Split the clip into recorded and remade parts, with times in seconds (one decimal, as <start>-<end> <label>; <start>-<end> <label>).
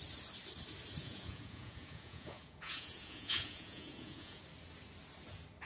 0.0-1.0 recorded; 1.0-4.4 remade; 4.4-5.7 recorded